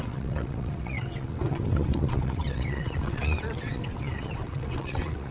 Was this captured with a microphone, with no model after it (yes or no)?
no